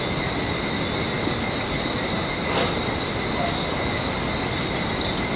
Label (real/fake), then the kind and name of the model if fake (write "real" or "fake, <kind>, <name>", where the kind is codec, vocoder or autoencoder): real